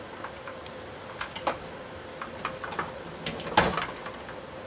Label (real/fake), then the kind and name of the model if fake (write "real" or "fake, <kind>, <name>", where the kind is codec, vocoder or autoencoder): real